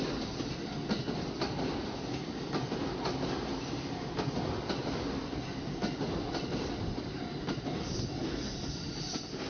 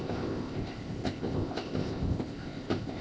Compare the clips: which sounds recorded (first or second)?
first